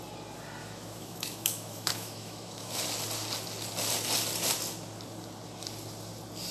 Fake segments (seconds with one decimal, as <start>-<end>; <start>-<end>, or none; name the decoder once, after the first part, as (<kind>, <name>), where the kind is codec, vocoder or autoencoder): 0.6-2.8 (autoencoder, DAC-VAE)